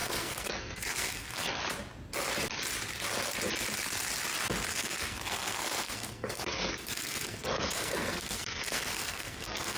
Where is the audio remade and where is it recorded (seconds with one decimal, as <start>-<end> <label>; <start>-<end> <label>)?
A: 0.0-1.6 remade; 1.6-4.7 recorded; 4.7-9.8 remade